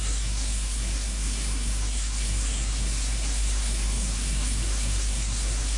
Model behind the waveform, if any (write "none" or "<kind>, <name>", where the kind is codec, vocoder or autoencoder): codec, SNAC